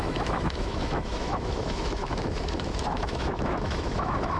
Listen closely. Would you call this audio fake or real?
fake